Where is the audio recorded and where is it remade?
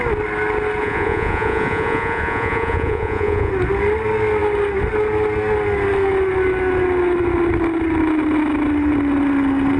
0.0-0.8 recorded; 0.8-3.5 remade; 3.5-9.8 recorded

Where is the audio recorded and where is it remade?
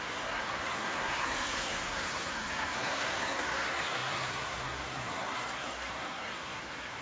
0.0-7.0 remade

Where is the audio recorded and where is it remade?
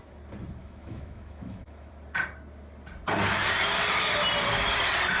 0.0-0.6 recorded; 0.6-1.9 remade; 1.9-5.2 recorded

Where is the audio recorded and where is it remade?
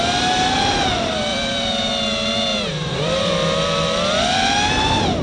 0.0-1.3 recorded; 1.3-1.9 remade; 1.9-2.5 recorded; 2.5-3.3 remade; 3.3-5.2 recorded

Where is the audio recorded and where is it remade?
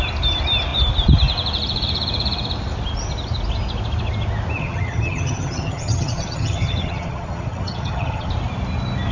0.0-4.6 recorded; 4.6-8.3 remade; 8.3-9.1 recorded